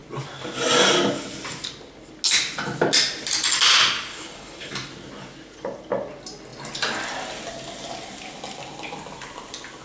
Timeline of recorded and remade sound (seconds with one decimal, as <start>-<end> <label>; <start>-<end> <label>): 0.0-4.1 recorded; 4.1-4.7 remade; 4.7-9.8 recorded